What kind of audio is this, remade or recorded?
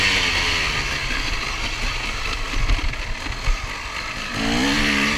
recorded